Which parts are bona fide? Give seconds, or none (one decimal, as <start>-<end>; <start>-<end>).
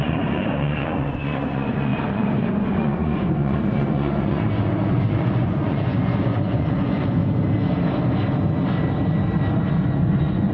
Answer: 7.2-9.7